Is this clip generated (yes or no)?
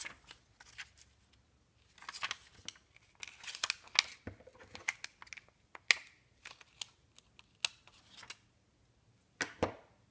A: no